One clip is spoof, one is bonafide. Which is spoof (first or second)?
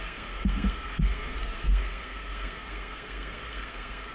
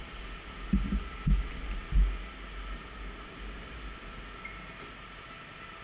first